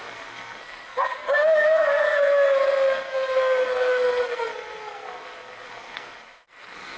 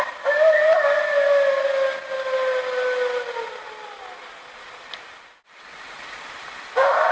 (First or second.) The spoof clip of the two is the first